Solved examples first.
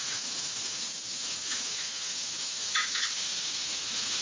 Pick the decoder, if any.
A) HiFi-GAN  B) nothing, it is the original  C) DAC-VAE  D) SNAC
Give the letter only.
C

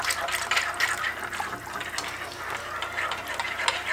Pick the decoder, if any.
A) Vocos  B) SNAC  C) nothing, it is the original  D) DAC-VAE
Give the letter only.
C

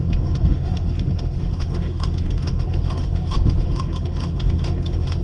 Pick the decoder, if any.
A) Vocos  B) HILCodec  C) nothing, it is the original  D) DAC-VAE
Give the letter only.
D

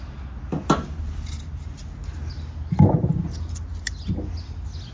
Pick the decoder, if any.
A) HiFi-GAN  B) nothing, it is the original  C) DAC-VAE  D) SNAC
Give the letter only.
B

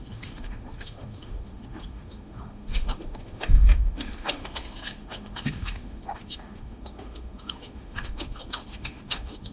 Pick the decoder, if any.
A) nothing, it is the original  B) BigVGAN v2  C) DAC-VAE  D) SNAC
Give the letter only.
C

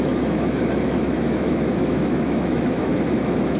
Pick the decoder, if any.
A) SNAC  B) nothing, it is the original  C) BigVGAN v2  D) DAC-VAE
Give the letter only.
D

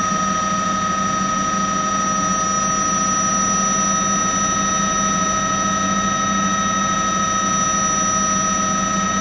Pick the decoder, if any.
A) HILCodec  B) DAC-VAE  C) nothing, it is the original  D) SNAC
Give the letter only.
C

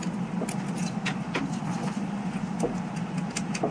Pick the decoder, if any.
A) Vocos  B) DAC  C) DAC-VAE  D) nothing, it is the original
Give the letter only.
D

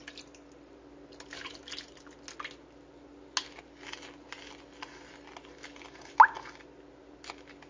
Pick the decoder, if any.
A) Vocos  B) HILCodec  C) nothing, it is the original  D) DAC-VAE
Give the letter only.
C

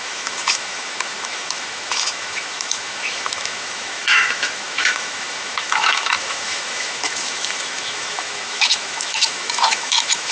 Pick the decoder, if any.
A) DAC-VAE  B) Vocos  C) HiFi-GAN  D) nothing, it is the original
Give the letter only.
A